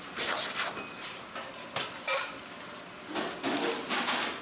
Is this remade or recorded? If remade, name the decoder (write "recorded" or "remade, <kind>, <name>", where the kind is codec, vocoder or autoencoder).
recorded